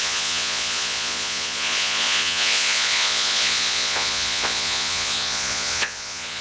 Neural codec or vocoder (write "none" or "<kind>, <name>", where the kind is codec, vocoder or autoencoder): vocoder, Vocos